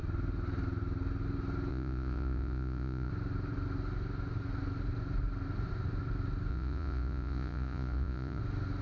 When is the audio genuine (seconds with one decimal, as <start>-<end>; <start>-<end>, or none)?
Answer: 0.0-1.7; 3.1-6.5; 8.4-8.8